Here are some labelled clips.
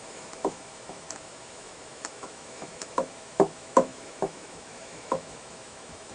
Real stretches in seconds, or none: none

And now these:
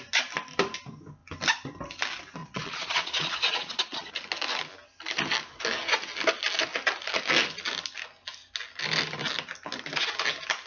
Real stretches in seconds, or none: 0.0-2.4; 4.1-10.7

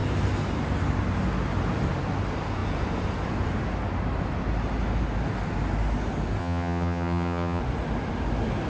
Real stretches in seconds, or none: 0.0-6.4; 7.6-8.7

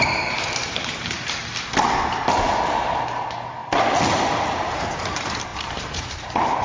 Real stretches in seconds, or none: 1.4-2.0; 3.6-4.4; 5.5-6.0

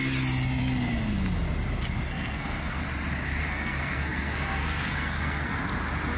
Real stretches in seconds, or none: 0.0-2.1; 2.8-3.4; 5.6-6.2

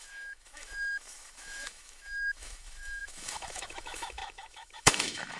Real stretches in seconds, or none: none

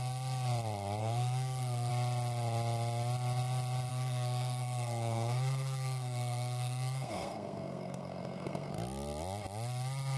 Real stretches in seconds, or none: 0.0-1.0; 1.9-3.9; 8.7-10.2